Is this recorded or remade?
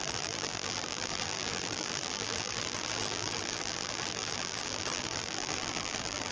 remade